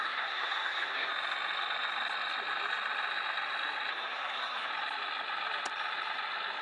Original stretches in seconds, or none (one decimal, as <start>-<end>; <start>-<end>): 1.1-3.9; 4.7-6.6